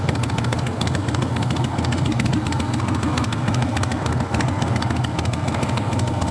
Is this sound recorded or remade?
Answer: remade